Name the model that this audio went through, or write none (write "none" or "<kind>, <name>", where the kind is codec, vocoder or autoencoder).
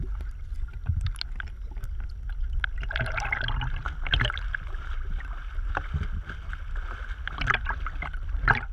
none